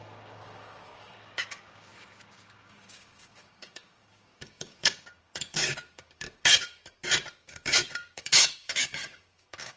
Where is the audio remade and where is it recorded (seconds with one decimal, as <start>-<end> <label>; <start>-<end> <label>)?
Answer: 0.0-6.8 remade; 6.8-7.3 recorded; 7.3-9.8 remade